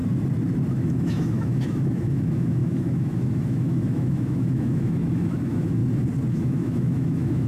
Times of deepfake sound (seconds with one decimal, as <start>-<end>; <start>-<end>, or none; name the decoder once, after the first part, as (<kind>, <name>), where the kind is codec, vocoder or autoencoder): 0.7-5.8 (autoencoder, DAC-VAE); 6.3-7.5